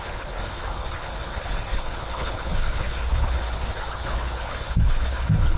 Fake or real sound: fake